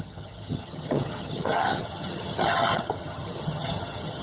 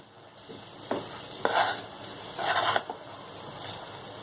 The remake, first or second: first